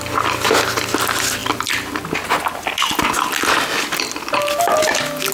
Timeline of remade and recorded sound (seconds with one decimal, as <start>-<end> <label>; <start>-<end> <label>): 0.0-5.3 recorded